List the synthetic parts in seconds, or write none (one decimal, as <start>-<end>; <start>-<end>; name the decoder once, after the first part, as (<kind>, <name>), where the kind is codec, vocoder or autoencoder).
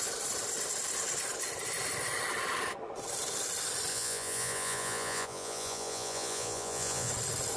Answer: 3.9-7.1 (vocoder, Vocos)